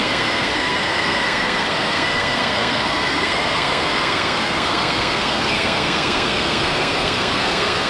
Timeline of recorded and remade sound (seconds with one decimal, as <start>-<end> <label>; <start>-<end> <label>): 0.0-7.9 remade